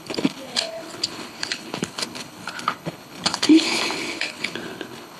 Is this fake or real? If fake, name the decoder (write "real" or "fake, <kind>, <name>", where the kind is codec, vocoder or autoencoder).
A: fake, codec, HILCodec